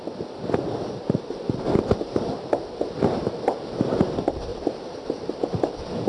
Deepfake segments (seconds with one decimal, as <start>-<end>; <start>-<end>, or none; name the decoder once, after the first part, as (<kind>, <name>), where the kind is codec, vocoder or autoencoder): 4.5-5.3 (vocoder, BigVGAN v2)